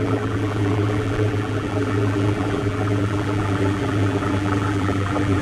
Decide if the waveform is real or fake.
fake